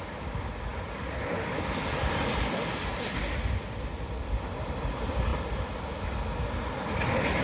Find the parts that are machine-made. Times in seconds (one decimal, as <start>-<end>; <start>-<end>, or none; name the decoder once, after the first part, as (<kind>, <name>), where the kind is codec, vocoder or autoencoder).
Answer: none